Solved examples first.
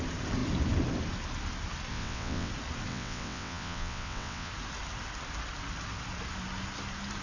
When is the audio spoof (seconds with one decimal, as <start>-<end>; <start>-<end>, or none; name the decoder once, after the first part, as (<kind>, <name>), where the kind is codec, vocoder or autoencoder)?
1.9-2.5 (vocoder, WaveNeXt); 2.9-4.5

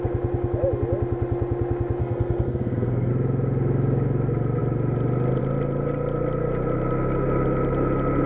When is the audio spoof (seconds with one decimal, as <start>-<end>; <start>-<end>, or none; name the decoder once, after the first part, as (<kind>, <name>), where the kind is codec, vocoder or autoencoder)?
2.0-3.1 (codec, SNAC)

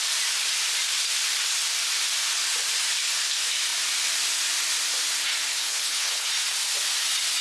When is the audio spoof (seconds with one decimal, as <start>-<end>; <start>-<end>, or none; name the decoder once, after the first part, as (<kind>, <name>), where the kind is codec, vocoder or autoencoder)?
5.5-6.3 (codec, HILCodec)